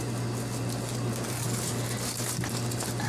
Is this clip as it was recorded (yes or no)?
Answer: yes